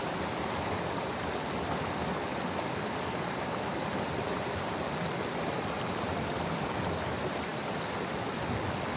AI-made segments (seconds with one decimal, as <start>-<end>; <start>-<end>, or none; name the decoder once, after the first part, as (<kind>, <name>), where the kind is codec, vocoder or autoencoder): 0.0-9.0 (vocoder, BigVGAN v2)